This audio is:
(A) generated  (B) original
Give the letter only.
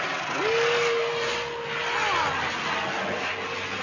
B